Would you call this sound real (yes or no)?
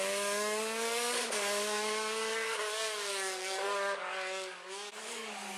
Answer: no